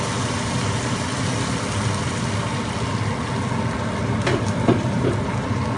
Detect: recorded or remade recorded